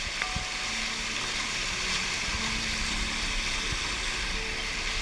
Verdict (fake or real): real